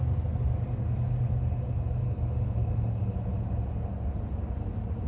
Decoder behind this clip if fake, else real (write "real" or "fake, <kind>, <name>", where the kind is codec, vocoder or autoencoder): real